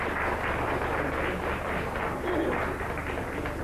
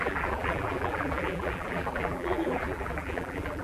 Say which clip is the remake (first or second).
second